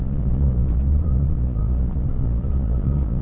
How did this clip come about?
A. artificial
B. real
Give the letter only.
A